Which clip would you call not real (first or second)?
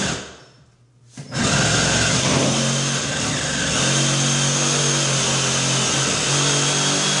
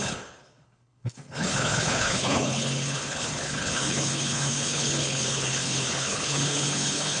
second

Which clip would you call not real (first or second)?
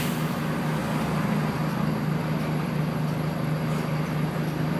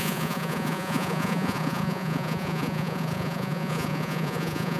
second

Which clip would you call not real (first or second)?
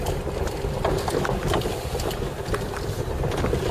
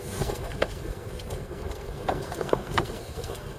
second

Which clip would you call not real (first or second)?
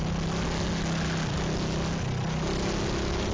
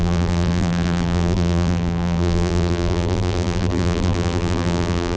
second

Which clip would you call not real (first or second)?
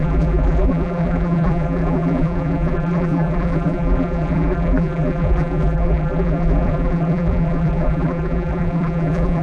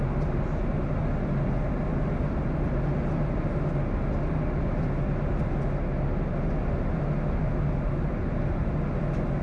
first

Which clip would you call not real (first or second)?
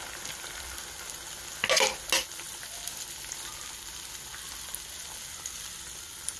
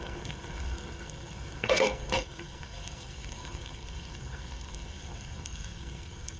second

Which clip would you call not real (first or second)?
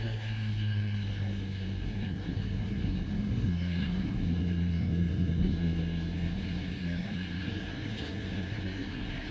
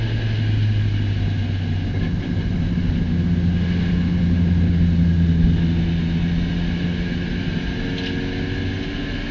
first